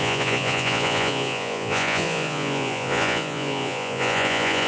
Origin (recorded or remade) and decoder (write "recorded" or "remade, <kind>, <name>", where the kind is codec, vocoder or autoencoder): remade, vocoder, Vocos